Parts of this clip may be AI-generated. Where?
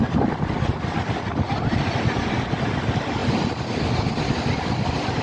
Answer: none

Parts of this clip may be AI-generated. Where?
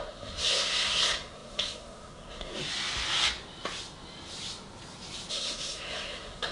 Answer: 0.0-2.6 (codec, SNAC); 5.3-6.5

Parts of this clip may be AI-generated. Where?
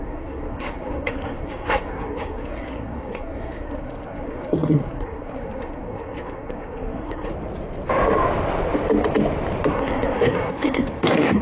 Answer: 0.0-7.3 (codec, SNAC); 9.7-11.4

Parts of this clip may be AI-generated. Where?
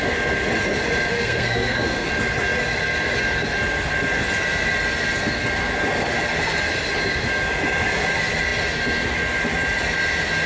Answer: 1.1-2.1 (codec, SNAC)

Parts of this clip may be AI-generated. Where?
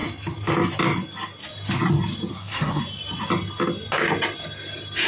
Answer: 2.3-2.8 (codec, SNAC)